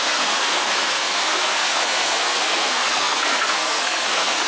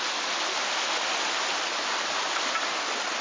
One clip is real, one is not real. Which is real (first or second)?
second